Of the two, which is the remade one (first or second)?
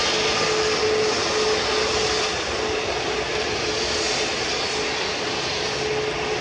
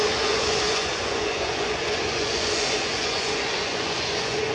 second